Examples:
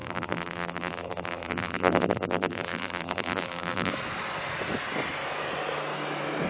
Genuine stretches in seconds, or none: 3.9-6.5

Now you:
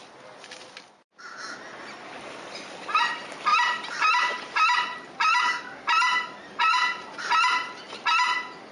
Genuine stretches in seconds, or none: 0.0-3.5; 7.3-8.7

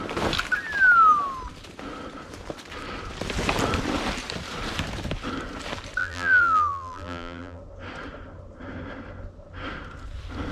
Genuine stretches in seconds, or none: 0.0-6.0; 7.6-10.5